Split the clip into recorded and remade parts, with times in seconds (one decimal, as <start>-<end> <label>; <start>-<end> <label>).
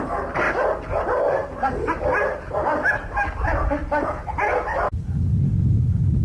0.0-6.2 recorded